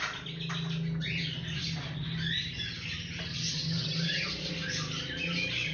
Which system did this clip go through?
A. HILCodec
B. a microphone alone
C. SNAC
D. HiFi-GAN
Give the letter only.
B